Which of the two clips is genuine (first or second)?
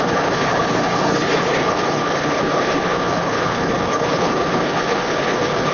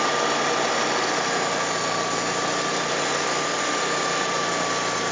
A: second